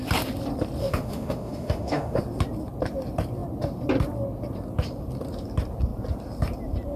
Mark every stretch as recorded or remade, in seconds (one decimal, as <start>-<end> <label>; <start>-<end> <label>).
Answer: 0.0-0.8 recorded; 0.8-2.2 remade; 2.2-7.0 recorded